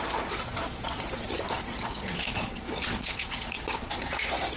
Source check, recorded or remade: remade